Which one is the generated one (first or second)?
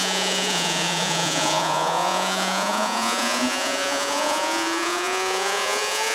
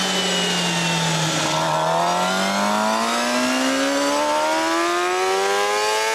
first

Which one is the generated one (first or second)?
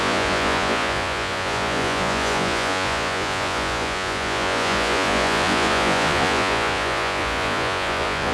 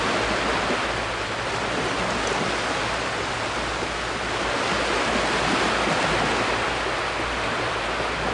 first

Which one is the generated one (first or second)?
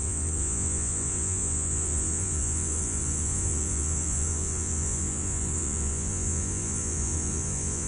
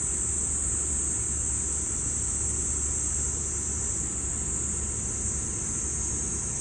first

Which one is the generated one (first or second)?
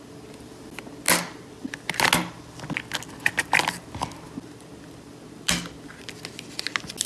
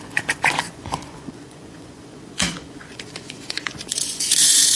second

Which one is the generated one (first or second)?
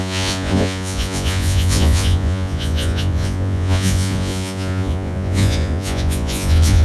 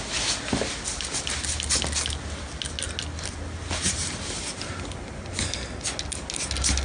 first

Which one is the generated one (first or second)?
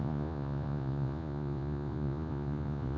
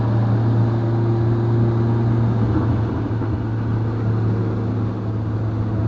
first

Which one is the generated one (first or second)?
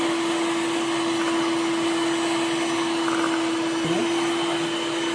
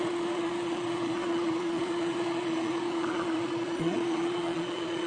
second